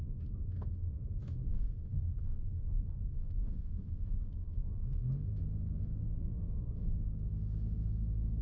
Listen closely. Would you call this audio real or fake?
fake